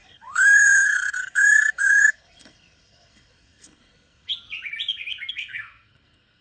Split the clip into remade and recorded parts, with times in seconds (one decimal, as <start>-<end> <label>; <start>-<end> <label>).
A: 0.0-4.3 remade; 4.3-5.3 recorded; 5.3-6.4 remade